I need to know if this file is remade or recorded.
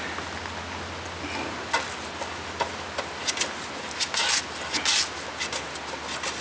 recorded